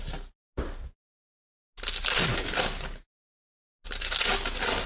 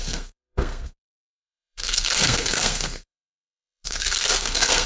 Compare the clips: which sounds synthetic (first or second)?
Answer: second